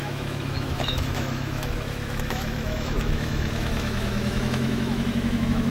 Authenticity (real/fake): fake